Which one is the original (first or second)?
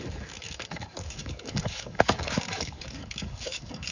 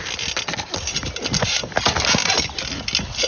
second